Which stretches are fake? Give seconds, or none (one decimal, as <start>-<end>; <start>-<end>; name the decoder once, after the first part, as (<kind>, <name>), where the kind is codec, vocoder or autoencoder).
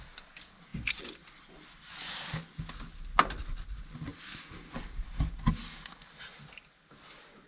none